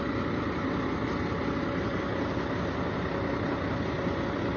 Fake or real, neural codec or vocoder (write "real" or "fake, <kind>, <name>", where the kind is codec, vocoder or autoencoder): real